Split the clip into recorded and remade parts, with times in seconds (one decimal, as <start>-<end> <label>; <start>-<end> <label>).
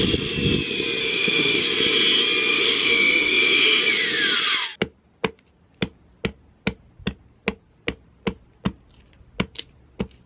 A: 0.0-1.0 recorded; 1.0-1.6 remade; 1.6-2.5 recorded; 2.5-3.8 remade; 3.8-10.3 recorded